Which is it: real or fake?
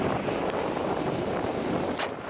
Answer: real